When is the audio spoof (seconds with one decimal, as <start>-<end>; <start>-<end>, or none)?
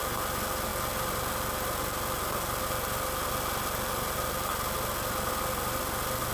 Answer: none